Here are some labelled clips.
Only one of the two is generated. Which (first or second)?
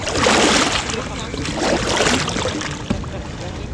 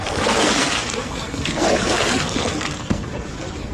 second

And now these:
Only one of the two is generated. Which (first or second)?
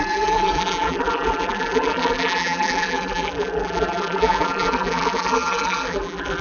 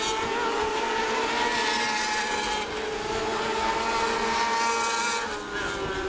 first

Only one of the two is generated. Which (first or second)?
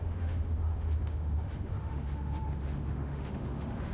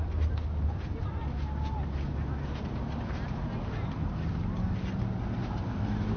first